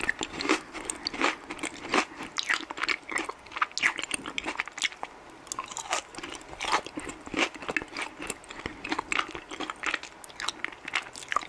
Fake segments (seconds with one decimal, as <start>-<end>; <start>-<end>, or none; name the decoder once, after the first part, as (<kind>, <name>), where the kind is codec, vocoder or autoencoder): none